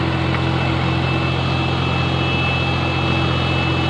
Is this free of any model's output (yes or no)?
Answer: yes